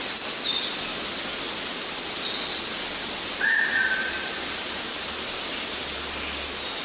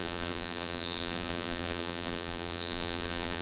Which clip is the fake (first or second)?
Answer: second